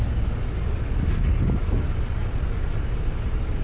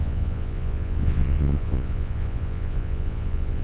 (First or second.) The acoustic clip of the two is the first